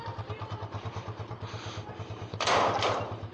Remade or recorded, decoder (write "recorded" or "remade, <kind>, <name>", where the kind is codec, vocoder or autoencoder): remade, vocoder, BigVGAN v2